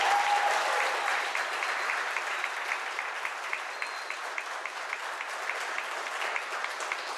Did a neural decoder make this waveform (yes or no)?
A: no